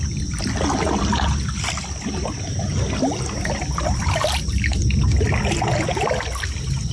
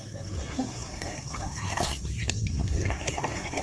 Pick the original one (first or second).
first